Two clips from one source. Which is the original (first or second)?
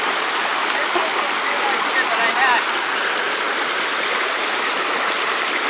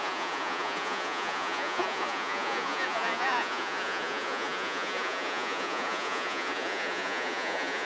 first